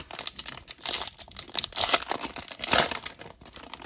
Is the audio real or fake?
real